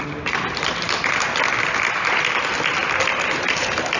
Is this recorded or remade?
recorded